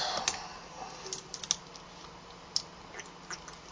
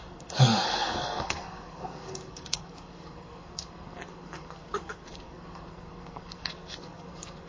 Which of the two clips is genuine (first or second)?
first